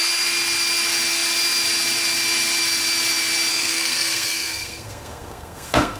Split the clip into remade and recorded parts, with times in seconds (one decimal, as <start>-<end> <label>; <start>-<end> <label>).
0.0-3.5 recorded; 3.5-6.0 remade